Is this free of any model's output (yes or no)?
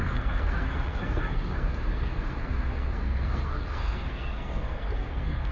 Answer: no